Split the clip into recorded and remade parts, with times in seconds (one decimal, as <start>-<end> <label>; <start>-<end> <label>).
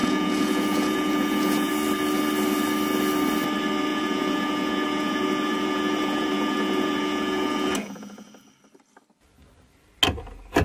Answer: 0.0-1.7 remade; 1.7-3.9 recorded; 3.9-8.3 remade; 8.3-10.6 recorded